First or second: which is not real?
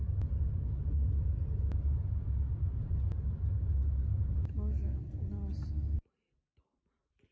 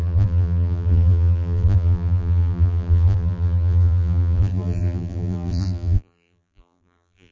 second